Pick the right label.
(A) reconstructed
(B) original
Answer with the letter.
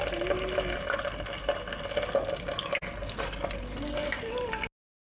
B